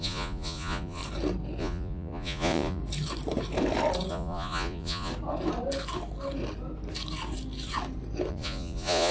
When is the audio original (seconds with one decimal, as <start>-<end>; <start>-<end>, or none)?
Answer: 1.0-1.6; 2.8-4.1; 5.1-8.3